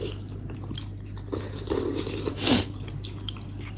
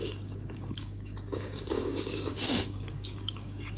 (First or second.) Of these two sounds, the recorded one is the first